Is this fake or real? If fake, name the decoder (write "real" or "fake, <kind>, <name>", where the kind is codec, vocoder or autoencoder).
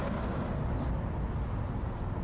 real